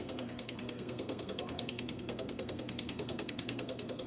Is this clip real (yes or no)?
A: no